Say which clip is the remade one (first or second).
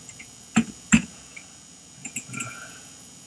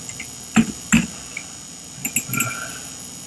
first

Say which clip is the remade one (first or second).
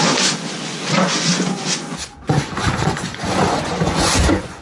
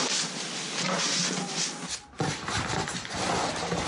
first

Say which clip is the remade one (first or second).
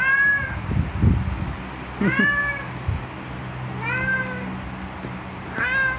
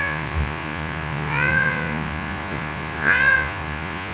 second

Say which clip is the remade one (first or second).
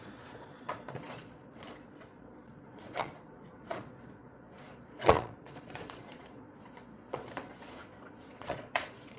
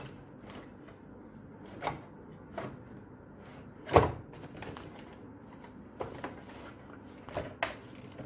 first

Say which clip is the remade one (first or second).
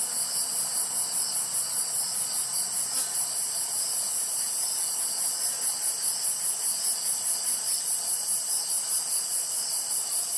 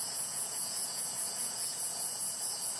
second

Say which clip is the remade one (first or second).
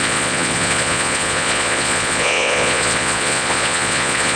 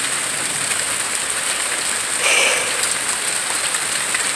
first